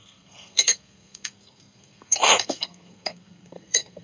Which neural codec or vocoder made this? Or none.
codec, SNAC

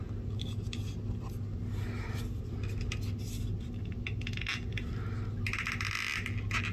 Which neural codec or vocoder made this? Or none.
none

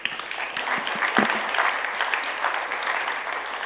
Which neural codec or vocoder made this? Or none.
none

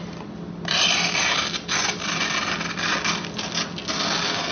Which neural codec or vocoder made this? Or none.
none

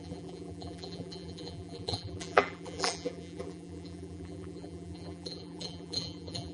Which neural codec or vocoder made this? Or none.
vocoder, BigVGAN v2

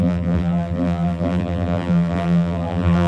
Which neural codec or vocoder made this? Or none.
vocoder, BigVGAN v2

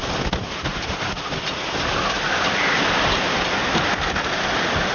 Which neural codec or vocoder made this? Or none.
none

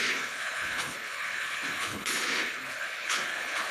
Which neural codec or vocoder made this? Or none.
codec, HILCodec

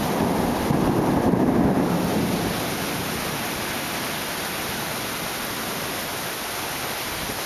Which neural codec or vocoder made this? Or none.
none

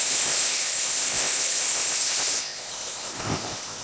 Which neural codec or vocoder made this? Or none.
codec, ZipCodec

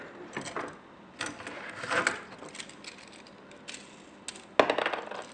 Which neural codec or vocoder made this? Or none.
none